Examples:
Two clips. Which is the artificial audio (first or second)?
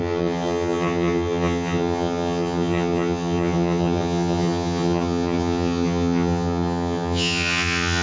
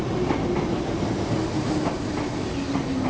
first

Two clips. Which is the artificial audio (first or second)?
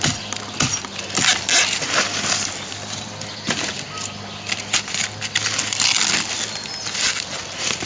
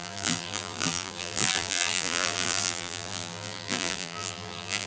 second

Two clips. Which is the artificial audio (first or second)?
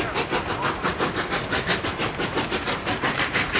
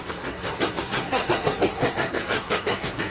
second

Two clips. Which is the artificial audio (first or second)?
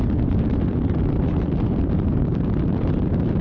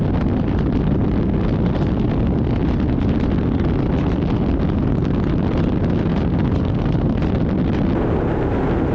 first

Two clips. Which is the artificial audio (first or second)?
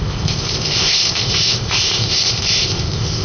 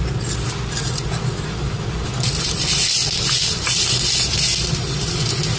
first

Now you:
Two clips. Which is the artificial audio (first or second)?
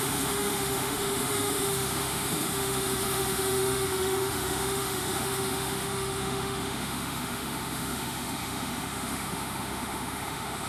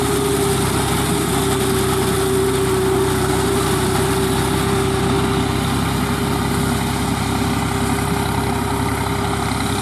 first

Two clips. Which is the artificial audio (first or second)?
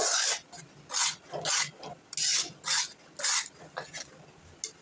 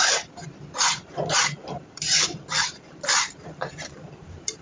second